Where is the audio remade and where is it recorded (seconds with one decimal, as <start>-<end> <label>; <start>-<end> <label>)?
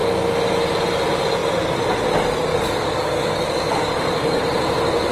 0.0-2.5 recorded; 2.5-4.4 remade; 4.4-5.1 recorded